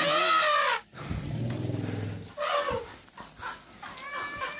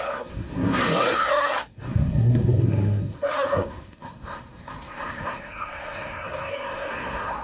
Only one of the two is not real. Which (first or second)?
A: second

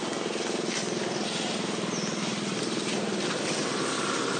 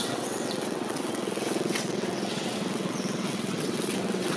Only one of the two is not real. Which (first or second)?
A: second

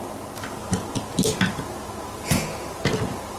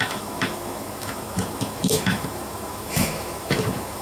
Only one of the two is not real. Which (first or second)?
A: second